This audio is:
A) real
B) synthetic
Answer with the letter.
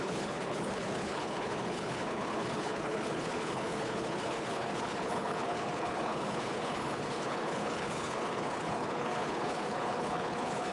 B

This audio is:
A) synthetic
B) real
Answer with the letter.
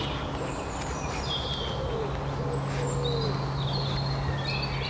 B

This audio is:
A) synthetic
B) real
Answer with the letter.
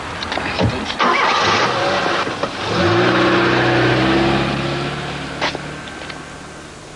B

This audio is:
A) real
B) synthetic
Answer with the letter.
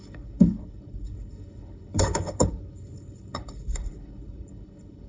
B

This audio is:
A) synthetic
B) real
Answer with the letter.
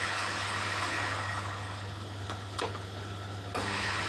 A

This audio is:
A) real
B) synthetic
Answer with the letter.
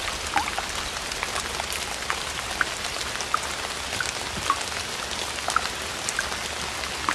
A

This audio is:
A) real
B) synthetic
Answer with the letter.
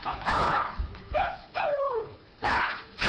B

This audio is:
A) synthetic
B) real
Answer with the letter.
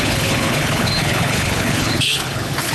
A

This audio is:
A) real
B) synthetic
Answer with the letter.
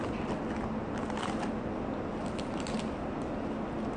A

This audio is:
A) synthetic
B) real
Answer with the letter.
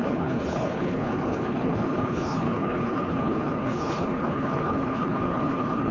A